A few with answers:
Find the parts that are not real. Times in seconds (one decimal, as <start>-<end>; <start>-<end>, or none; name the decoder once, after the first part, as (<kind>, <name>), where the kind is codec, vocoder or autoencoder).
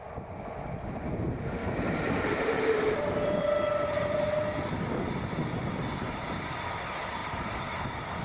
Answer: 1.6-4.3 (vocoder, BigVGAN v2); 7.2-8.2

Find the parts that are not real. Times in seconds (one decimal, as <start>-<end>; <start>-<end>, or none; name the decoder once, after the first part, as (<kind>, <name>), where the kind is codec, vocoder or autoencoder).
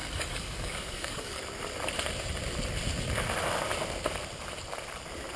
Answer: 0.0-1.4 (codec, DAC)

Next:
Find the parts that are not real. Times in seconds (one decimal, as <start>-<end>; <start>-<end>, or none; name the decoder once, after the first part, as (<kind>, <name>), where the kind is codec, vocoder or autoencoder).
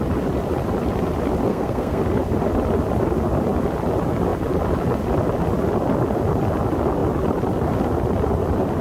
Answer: 1.5-2.0 (codec, SNAC)